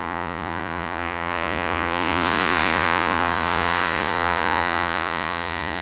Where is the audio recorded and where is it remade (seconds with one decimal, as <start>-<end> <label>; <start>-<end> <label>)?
0.0-5.8 remade